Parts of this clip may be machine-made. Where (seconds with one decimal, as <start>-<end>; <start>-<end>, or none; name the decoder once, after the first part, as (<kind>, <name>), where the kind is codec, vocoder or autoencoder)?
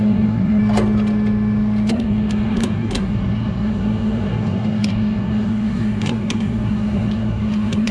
0.0-0.6 (codec, SNAC); 1.9-7.9